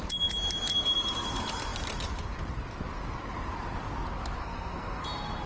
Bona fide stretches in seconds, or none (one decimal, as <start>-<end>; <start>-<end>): 0.0-4.4; 5.0-5.5